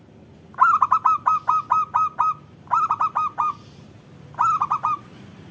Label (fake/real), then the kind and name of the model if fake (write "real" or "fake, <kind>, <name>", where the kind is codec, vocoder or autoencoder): real